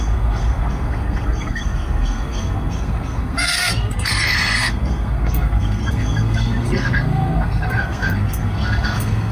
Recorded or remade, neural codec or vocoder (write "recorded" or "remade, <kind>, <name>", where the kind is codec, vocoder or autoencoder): remade, codec, SNAC